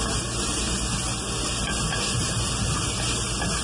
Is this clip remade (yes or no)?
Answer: no